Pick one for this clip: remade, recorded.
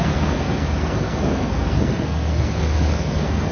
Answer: remade